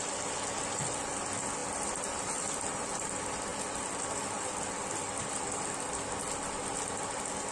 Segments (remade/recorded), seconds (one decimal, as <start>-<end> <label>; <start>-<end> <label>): 0.0-7.5 recorded